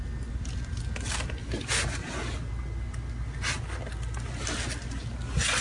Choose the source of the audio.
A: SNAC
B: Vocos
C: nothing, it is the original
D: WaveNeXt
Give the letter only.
C